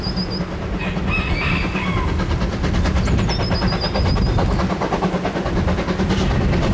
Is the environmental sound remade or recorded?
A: recorded